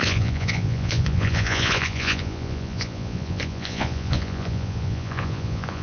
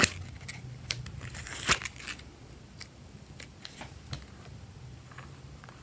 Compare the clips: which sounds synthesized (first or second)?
first